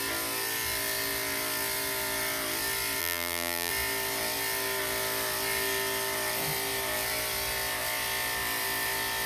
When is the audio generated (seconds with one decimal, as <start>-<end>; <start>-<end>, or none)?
3.0-3.7